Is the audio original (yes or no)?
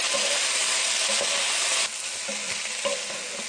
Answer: yes